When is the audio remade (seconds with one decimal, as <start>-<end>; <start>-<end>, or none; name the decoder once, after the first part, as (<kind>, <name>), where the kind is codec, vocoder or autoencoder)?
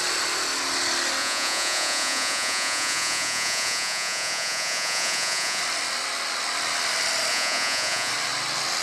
1.2-5.6 (vocoder, Vocos); 7.3-8.1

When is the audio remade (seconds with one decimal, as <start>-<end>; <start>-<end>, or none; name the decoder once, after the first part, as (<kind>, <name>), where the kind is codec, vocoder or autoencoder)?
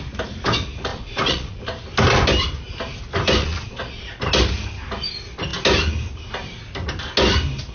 0.9-1.6 (vocoder, Vocos); 3.4-4.0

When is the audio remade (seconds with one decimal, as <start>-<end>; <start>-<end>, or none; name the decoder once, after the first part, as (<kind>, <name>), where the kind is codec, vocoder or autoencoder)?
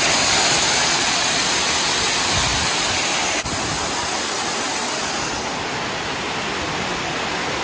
0.8-1.3 (vocoder, Vocos)